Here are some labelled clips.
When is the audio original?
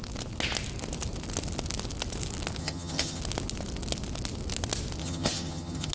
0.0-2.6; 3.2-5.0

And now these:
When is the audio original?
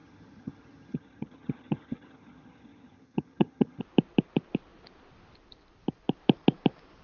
3.8-7.0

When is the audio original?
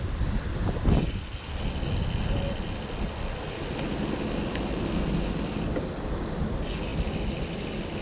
0.0-8.0